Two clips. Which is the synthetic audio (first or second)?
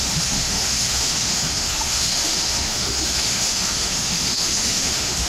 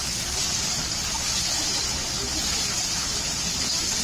first